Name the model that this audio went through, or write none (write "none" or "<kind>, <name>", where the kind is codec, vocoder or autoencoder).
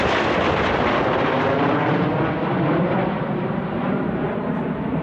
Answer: none